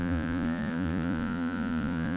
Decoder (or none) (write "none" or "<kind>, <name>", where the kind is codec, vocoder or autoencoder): vocoder, Vocos